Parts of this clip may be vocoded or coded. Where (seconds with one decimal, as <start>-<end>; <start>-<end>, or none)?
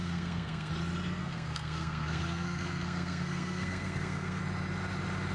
0.0-0.7; 1.2-4.4